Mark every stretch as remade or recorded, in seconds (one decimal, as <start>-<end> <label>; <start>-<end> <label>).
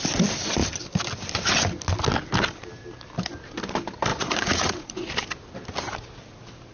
0.0-4.1 recorded; 4.1-5.1 remade; 5.1-6.7 recorded